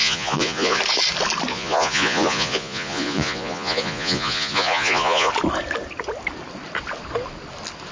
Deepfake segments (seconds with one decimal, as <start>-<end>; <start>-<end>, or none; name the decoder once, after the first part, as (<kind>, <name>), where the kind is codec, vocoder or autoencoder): 0.0-0.8 (vocoder, Vocos); 1.5-5.3